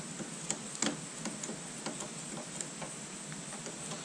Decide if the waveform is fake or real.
real